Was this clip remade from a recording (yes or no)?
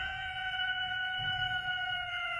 yes